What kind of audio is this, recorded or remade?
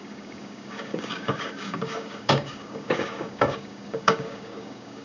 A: remade